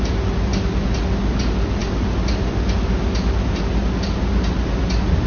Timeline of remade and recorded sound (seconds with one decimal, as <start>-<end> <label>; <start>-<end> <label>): 0.0-5.3 recorded